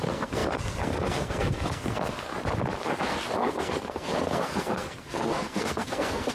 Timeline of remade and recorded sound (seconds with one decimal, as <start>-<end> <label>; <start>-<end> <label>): 0.0-2.3 remade; 2.3-3.0 recorded; 3.0-6.3 remade